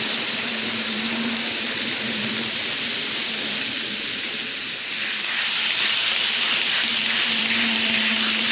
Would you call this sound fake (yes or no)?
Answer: yes